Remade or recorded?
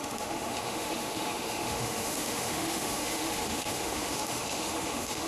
remade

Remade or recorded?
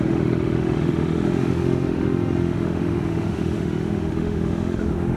remade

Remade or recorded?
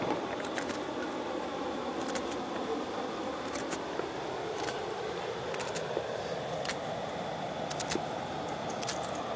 recorded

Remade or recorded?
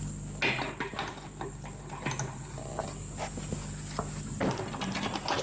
recorded